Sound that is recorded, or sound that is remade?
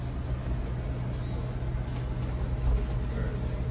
recorded